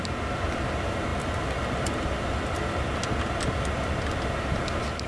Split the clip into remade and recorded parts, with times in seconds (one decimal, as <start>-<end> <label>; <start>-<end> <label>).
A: 0.0-5.1 recorded